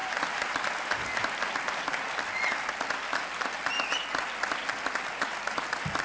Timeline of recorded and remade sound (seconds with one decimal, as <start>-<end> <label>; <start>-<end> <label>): 0.0-6.0 recorded